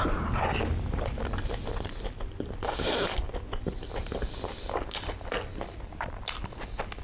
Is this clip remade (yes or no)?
no